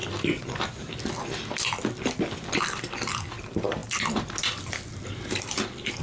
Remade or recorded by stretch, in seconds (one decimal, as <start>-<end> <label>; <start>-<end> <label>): 0.0-2.6 recorded; 2.6-3.8 remade; 3.8-5.4 recorded; 5.4-6.0 remade